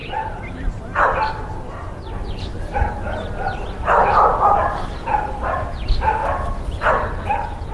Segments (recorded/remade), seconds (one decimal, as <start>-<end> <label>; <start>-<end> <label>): 0.0-7.7 recorded